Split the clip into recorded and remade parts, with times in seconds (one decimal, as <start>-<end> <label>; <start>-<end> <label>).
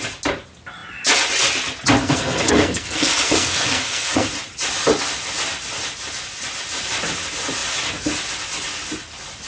0.0-2.0 recorded; 2.0-4.3 remade; 4.3-9.5 recorded